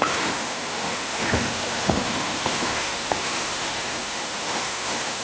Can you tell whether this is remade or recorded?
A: remade